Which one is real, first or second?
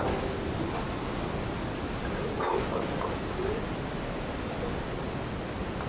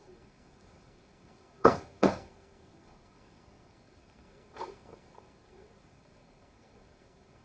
first